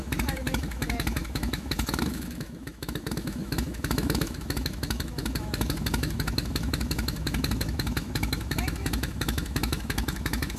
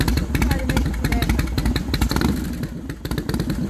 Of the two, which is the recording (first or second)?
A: second